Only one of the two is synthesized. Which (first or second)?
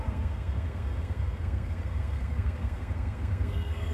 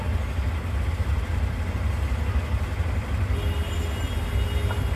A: first